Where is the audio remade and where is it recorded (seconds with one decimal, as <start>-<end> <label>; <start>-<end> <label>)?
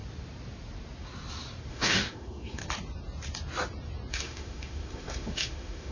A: 0.0-1.7 recorded; 1.7-2.6 remade; 2.6-4.1 recorded; 4.1-5.9 remade